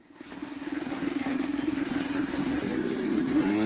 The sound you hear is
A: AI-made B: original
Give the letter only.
A